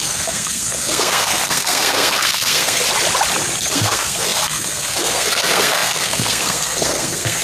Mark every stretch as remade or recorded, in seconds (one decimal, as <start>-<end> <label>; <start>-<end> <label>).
0.0-2.8 remade; 2.8-3.6 recorded; 3.6-7.4 remade